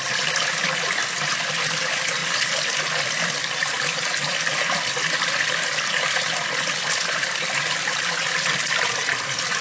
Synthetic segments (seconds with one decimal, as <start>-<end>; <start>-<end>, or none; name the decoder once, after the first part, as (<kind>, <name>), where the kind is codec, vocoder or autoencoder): none